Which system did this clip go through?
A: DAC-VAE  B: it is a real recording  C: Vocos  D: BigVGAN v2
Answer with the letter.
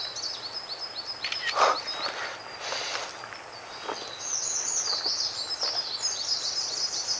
B